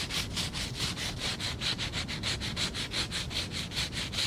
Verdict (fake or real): real